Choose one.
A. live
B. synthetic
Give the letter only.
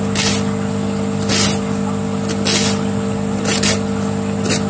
A